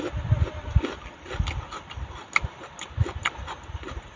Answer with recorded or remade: recorded